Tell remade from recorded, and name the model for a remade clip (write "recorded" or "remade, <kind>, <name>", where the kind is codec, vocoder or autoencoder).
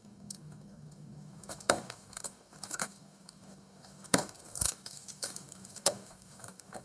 remade, codec, DAC